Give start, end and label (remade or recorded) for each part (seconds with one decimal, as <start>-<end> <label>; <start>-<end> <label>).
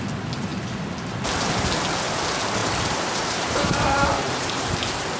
0.0-2.6 recorded; 2.6-4.7 remade; 4.7-5.2 recorded